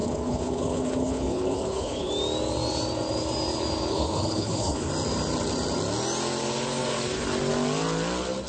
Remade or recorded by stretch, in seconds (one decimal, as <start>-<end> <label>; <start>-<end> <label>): 0.0-2.1 remade; 2.1-3.9 recorded; 3.9-4.9 remade; 4.9-8.5 recorded